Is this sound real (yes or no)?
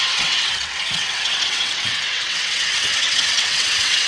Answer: no